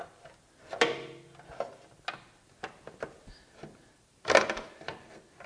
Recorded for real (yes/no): yes